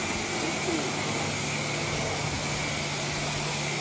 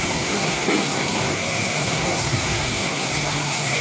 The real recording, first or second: first